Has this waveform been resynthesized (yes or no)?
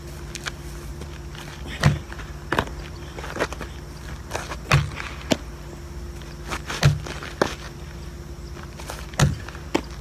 no